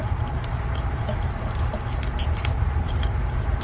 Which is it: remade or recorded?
recorded